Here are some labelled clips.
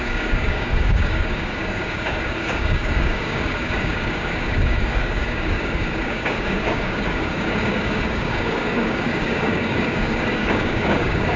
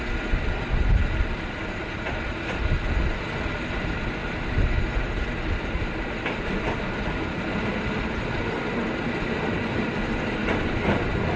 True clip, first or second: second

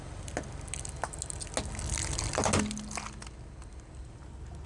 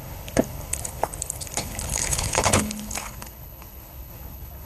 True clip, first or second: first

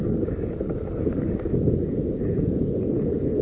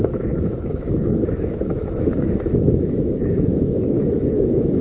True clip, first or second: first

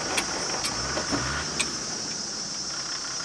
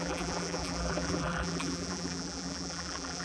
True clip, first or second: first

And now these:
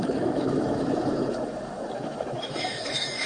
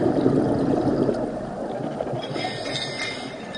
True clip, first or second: second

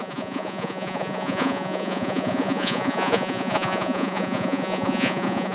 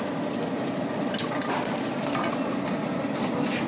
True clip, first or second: second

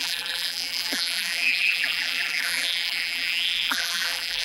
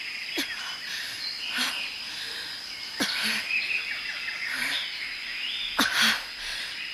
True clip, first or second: second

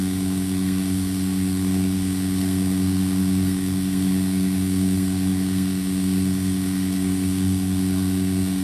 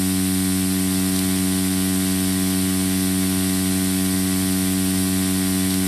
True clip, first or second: second